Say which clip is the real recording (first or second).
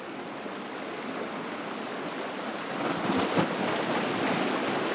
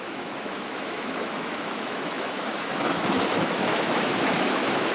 first